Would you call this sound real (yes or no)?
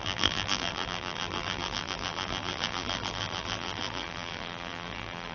no